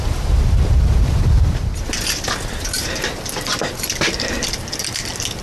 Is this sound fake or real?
fake